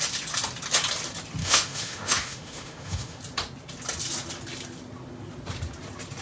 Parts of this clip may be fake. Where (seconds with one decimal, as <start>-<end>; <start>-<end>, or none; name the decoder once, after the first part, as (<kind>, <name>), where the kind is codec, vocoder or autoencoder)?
1.4-3.2 (autoencoder, DAC-VAE)